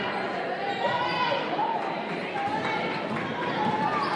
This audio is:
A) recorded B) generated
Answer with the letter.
A